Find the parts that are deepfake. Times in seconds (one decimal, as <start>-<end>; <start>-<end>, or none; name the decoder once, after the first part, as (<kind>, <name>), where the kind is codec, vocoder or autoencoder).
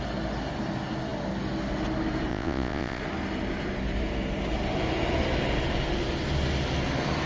2.3-3.0 (vocoder, Vocos)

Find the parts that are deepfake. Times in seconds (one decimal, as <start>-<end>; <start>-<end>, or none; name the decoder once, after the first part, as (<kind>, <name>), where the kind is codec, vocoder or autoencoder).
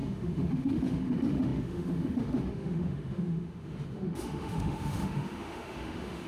0.0-6.3 (autoencoder, DAC-VAE)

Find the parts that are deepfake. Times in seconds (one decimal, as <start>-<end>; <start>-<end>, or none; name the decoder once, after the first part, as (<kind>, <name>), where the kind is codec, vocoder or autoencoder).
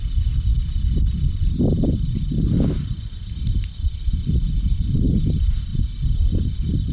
none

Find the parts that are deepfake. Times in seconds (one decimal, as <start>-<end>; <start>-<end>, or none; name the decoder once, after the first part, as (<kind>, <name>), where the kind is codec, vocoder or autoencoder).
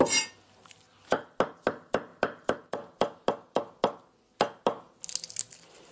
none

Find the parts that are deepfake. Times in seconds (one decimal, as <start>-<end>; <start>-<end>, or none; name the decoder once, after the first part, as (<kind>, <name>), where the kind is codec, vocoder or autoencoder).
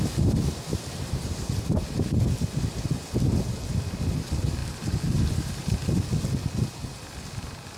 0.7-2.1 (vocoder, BigVGAN v2); 4.6-6.0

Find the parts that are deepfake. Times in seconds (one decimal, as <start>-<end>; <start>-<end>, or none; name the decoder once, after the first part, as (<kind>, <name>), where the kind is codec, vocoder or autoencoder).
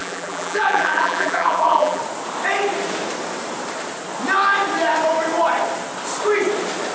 0.0-2.0 (vocoder, BigVGAN v2)